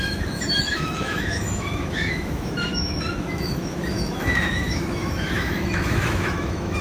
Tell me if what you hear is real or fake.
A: fake